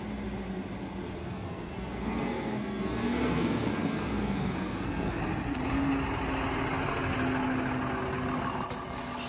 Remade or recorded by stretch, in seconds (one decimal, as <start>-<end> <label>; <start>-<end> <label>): 0.0-1.2 recorded; 1.2-5.2 remade; 5.2-9.3 recorded